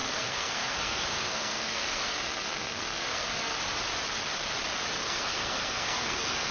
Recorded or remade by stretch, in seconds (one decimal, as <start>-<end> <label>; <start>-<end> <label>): 0.0-3.6 remade; 3.6-5.0 recorded; 5.0-6.5 remade